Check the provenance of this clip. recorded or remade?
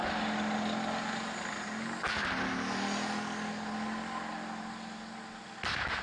recorded